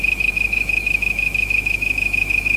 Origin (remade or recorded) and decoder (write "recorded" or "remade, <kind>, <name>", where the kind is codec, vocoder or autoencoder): remade, autoencoder, DAC-VAE